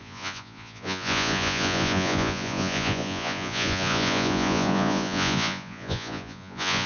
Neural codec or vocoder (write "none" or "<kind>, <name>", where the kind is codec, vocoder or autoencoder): vocoder, Vocos